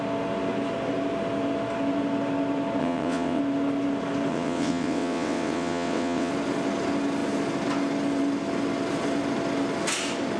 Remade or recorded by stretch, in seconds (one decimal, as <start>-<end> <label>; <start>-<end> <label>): 0.0-2.8 recorded; 2.8-3.4 remade; 3.4-4.3 recorded; 4.3-6.3 remade; 6.3-10.4 recorded